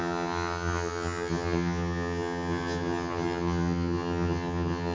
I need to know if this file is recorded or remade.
remade